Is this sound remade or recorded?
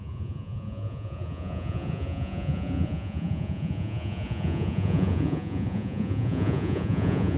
remade